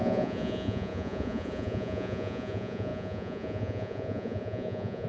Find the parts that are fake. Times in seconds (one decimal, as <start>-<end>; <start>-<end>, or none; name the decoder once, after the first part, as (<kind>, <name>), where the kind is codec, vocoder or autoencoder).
0.0-5.1 (vocoder, Vocos)